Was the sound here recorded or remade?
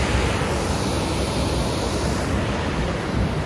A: remade